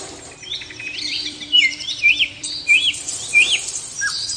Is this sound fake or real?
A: fake